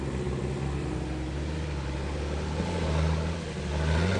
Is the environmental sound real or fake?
real